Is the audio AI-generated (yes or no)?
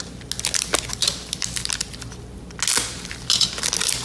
no